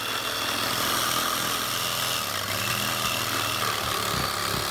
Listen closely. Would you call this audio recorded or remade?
recorded